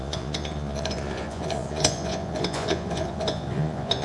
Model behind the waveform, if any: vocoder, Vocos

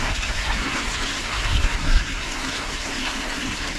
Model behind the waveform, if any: codec, SNAC